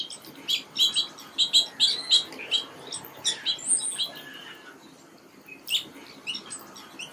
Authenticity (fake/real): real